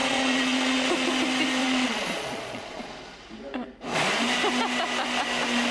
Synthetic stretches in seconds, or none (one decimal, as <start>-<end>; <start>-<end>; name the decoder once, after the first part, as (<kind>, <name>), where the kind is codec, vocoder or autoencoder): 0.0-1.1 (vocoder, Vocos); 1.6-2.9